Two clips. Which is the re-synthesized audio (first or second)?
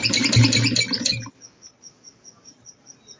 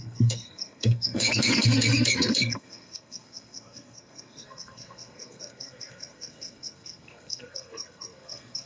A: second